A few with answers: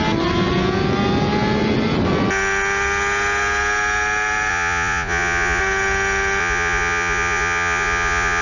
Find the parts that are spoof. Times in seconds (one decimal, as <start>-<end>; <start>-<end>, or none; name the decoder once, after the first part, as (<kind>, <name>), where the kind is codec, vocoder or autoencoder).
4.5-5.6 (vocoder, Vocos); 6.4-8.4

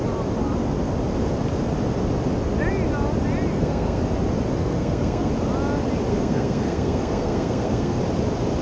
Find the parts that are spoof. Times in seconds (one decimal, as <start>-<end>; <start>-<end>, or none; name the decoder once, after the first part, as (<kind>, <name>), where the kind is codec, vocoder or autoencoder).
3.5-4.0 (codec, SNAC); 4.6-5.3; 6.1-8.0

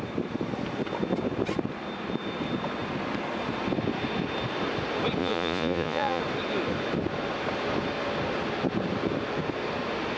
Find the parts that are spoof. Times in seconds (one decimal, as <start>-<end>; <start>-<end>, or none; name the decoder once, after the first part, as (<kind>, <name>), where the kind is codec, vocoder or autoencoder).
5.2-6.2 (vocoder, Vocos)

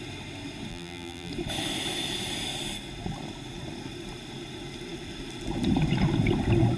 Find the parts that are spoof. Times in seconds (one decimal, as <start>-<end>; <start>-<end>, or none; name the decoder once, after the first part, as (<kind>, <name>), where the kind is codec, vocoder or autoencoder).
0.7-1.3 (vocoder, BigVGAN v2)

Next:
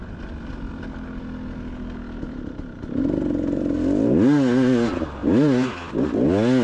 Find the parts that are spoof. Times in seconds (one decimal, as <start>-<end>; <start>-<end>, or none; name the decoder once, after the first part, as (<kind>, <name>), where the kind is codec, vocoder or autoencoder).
none

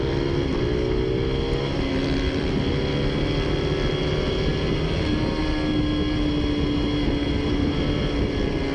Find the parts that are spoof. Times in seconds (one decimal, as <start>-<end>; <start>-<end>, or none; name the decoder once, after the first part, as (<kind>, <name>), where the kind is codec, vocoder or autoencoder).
none

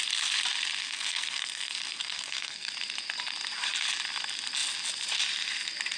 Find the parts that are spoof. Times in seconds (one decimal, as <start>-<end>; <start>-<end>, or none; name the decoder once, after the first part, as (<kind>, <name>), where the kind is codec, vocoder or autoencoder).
0.8-2.7 (codec, SNAC)